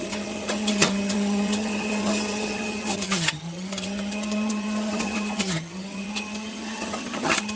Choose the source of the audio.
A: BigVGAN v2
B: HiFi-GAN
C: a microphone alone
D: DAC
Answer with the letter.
B